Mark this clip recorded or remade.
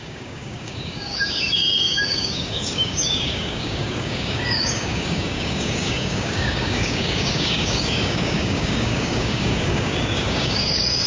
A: remade